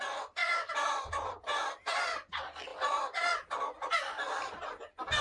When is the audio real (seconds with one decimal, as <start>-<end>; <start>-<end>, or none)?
0.0-5.2